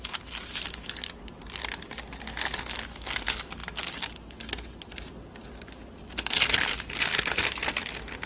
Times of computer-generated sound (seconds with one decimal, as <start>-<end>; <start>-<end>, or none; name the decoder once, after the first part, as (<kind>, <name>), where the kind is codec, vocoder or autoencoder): none